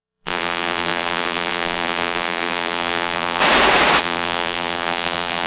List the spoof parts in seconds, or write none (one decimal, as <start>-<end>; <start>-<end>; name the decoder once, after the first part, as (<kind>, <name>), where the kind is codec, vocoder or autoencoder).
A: 0.0-3.4 (vocoder, BigVGAN v2); 4.0-5.5

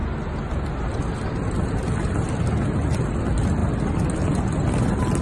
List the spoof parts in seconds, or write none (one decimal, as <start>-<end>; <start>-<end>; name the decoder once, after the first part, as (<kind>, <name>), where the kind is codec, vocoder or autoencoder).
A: none

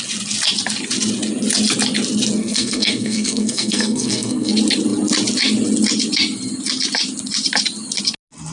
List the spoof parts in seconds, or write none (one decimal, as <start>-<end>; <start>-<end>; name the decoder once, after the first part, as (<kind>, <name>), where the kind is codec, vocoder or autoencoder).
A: 2.4-4.5 (codec, SNAC)

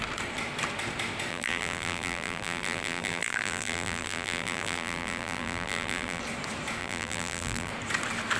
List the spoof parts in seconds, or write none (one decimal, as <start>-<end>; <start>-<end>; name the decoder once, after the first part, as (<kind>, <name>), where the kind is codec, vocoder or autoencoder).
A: 1.3-6.2 (vocoder, BigVGAN v2); 6.8-7.7

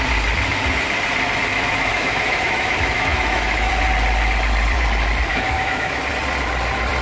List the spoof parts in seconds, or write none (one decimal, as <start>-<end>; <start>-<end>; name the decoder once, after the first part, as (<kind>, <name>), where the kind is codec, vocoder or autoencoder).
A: 1.5-3.7 (autoencoder, DAC-VAE); 5.3-6.0

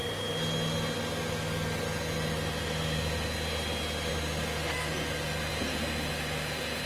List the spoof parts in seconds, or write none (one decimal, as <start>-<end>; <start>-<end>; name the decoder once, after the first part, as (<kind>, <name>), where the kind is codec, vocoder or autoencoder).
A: none

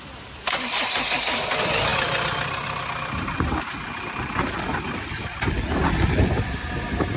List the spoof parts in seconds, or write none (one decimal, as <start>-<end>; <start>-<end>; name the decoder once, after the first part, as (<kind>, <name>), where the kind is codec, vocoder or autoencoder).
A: none

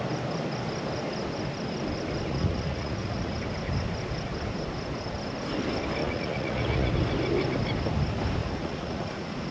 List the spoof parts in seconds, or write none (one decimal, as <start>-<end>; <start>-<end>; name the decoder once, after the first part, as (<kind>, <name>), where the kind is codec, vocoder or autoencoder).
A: 2.3-3.3 (vocoder, Vocos); 6.0-6.9; 8.4-9.5